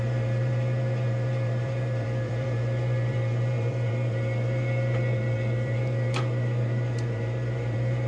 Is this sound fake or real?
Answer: fake